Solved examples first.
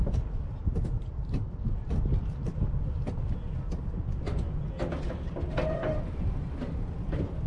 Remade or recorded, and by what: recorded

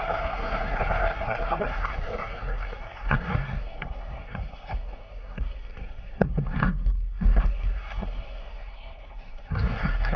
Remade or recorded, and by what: remade, codec, SNAC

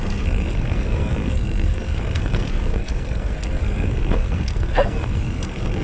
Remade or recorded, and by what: remade, codec, SNAC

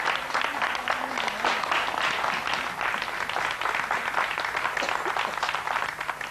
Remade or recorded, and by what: recorded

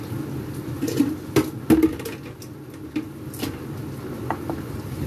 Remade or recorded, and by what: recorded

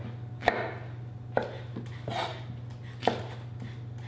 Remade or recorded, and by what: recorded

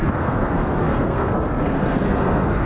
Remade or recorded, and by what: remade, codec, SNAC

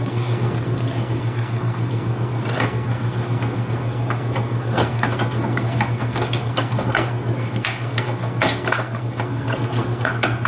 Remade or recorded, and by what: remade, codec, SNAC